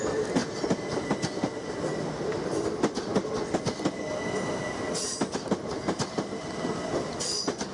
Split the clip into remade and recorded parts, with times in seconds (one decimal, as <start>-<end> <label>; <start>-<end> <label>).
0.0-7.7 recorded